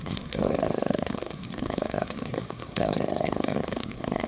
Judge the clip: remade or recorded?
remade